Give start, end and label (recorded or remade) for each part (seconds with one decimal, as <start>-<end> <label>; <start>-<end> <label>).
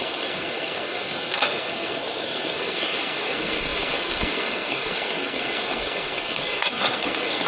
0.0-7.5 remade